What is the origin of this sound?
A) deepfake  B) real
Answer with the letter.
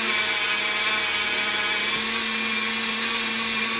B